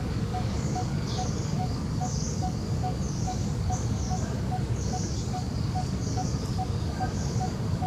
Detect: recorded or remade remade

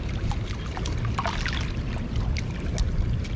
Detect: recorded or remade recorded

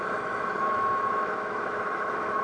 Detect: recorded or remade remade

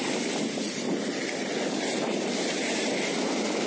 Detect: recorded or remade recorded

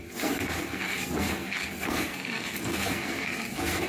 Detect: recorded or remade remade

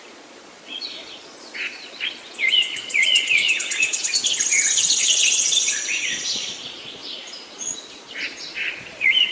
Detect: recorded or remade remade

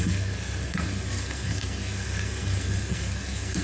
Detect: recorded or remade remade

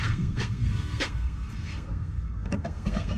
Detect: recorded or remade remade